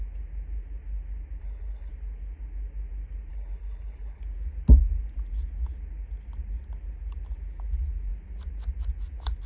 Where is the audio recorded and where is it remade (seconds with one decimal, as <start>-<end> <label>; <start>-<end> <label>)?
0.0-1.4 recorded; 1.4-1.9 remade; 1.9-3.3 recorded; 3.3-4.2 remade; 4.2-9.5 recorded